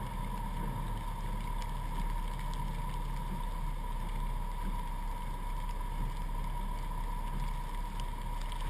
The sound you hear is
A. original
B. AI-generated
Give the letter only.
A